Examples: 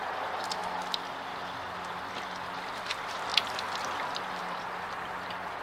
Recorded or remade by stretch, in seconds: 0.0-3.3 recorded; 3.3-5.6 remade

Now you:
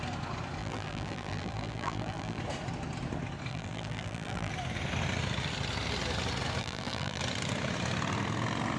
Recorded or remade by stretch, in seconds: 0.0-0.6 recorded; 0.6-2.4 remade; 2.4-3.5 recorded; 3.5-4.5 remade; 4.5-6.6 recorded; 6.6-7.2 remade; 7.2-8.8 recorded

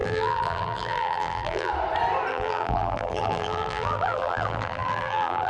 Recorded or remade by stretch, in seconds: 0.0-1.7 remade; 1.7-2.3 recorded; 2.3-5.5 remade